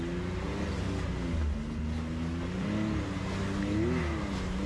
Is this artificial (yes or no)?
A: no